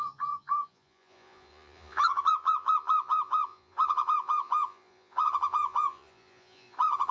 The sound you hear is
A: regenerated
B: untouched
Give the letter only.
A